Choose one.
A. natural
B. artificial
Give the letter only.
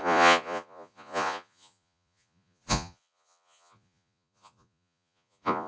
B